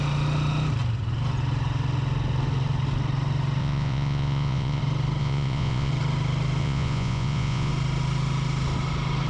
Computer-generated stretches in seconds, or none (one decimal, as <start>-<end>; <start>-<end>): 3.6-4.8; 5.2-5.9; 6.6-7.7